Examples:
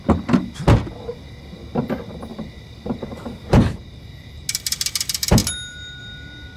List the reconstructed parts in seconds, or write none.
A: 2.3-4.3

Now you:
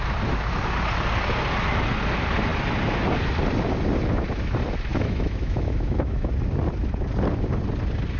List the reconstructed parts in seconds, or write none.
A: 4.9-6.3

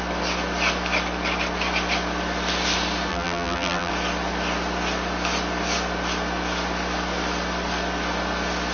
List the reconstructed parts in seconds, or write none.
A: 3.1-3.9

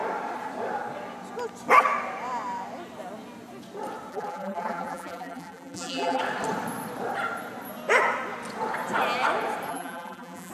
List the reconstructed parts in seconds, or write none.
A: 4.1-6.2; 9.7-10.5

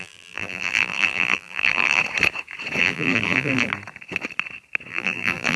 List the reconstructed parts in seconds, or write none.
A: 0.0-2.0; 2.8-3.7; 4.9-5.6

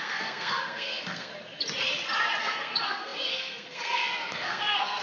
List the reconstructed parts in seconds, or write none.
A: 0.0-1.3; 2.4-5.0

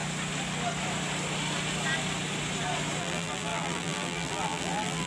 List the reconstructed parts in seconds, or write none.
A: 3.0-5.1

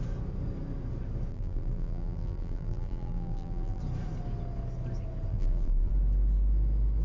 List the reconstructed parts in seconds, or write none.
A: 1.3-3.8; 5.3-5.9